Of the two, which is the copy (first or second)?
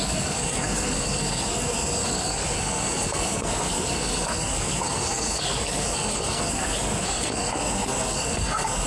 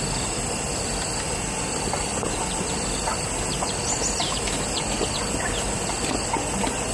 first